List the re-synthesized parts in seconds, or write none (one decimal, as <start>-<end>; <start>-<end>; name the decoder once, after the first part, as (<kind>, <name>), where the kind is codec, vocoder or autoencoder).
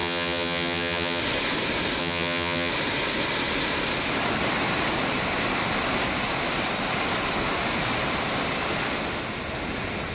0.0-1.2 (vocoder, HiFi-GAN); 2.0-2.7